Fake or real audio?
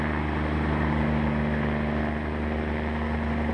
real